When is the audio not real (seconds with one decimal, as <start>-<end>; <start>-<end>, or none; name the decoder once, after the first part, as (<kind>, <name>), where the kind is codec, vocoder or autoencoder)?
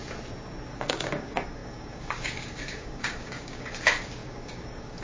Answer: 0.7-5.0 (codec, DAC)